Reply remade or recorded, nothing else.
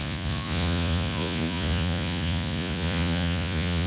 remade